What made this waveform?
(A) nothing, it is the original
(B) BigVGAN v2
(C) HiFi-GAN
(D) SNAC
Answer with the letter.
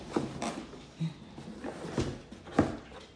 A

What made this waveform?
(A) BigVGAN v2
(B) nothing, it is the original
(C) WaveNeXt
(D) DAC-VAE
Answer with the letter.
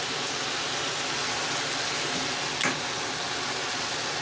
B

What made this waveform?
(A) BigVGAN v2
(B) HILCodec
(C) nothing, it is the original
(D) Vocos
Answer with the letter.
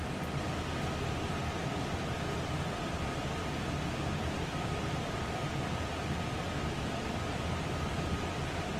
A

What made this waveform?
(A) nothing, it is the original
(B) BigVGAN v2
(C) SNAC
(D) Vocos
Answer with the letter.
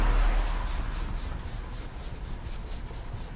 A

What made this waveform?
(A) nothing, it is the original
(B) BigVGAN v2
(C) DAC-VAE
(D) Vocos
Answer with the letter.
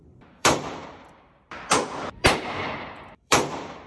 B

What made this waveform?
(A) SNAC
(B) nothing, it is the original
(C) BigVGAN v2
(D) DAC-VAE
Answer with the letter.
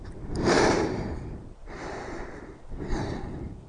C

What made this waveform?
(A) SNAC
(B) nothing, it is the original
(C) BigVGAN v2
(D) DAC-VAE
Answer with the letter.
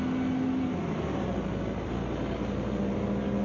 B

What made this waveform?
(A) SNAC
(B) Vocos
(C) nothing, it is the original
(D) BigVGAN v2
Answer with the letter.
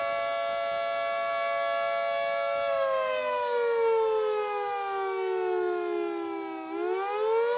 C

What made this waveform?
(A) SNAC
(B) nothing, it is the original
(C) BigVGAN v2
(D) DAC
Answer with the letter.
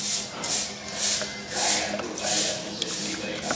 B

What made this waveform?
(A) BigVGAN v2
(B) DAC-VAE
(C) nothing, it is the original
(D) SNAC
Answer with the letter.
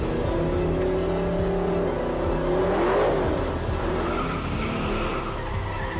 C